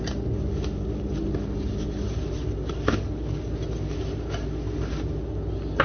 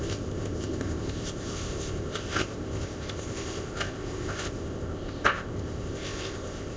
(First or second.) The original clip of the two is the first